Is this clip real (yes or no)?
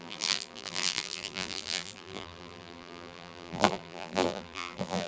no